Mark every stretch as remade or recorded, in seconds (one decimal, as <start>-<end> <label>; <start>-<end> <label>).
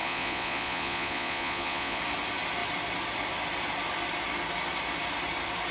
0.0-2.0 remade; 2.0-5.7 recorded